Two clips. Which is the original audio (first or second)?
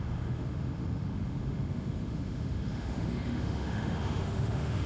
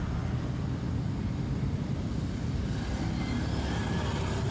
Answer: second